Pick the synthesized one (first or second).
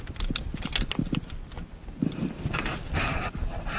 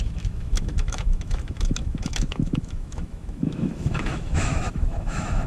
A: second